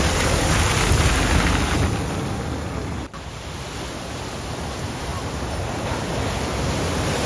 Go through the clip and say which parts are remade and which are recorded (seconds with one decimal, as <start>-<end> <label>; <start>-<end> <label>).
0.0-7.3 recorded